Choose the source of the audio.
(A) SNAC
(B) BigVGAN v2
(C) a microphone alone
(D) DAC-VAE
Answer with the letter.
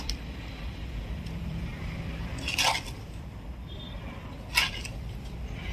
C